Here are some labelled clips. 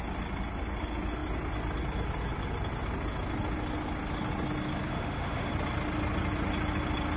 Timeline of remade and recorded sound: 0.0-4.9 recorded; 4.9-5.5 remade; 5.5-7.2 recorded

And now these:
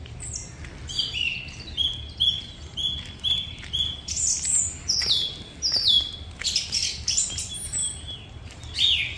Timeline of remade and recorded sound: 0.0-9.2 recorded

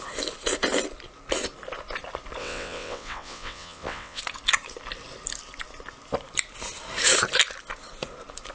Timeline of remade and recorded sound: 0.0-2.4 recorded; 2.4-4.2 remade; 4.2-8.5 recorded

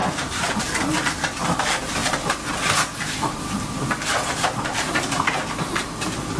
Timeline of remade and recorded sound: 0.0-0.6 remade; 0.6-6.4 recorded

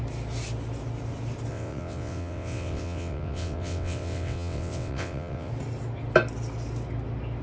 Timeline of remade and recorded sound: 0.0-1.5 recorded; 1.5-5.5 remade; 5.5-7.4 recorded

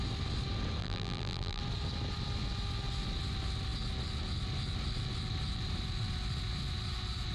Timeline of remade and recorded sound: 0.0-0.8 recorded; 0.8-1.6 remade; 1.6-7.3 recorded

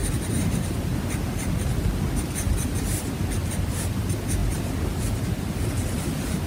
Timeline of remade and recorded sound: 0.0-6.5 recorded

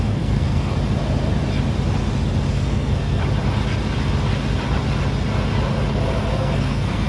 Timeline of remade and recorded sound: 0.0-0.7 remade; 0.7-2.5 recorded; 2.5-3.2 remade; 3.2-6.3 recorded; 6.3-7.1 remade